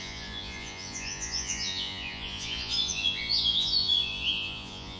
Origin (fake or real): fake